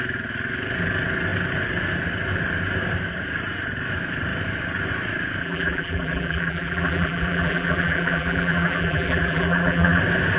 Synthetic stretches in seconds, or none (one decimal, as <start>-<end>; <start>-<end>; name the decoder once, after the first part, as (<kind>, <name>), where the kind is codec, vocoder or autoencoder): 5.4-10.0 (vocoder, BigVGAN v2)